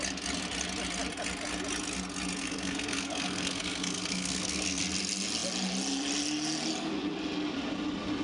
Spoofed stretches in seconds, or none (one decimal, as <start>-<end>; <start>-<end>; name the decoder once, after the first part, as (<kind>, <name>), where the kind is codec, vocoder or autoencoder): 2.4-4.8 (codec, SNAC)